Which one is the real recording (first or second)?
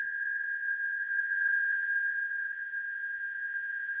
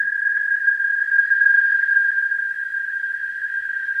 second